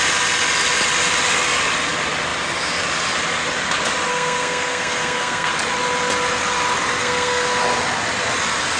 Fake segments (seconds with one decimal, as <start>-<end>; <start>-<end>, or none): 4.1-5.5; 7.0-7.6